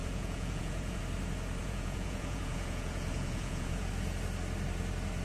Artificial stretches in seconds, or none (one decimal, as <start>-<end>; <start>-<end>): 0.0-1.0; 1.6-3.9